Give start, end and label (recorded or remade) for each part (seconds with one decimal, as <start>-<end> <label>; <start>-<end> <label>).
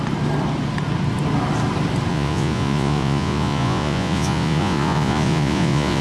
0.0-2.1 recorded; 2.1-6.0 remade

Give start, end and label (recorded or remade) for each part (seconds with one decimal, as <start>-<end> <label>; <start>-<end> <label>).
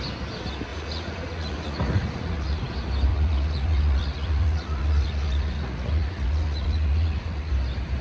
0.0-0.7 recorded; 0.7-2.6 remade; 2.6-3.1 recorded; 3.1-7.5 remade; 7.5-8.0 recorded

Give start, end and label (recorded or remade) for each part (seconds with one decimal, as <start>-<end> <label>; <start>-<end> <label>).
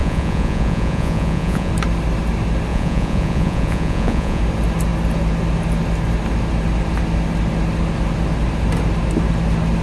0.0-1.7 remade; 1.7-2.7 recorded; 2.7-4.4 remade; 4.4-9.8 recorded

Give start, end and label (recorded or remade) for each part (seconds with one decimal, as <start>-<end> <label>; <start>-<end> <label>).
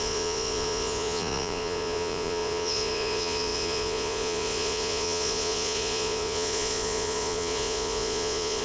0.0-8.6 remade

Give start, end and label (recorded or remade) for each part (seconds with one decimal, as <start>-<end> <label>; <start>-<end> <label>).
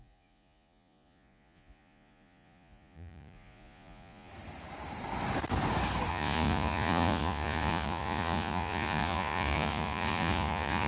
0.0-4.3 remade; 4.3-6.1 recorded; 6.1-10.9 remade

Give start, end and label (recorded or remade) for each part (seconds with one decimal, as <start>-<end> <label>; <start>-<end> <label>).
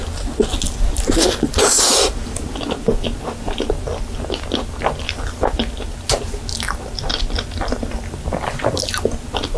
0.0-9.6 recorded